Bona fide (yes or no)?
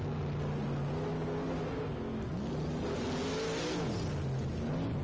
yes